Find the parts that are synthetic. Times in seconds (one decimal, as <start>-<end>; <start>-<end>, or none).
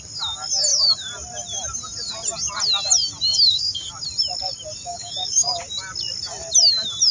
3.3-3.9; 4.9-5.6